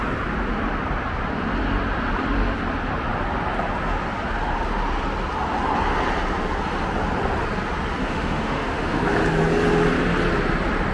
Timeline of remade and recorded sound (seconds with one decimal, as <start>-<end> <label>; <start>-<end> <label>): 0.0-8.0 recorded; 8.0-9.0 remade; 9.0-10.9 recorded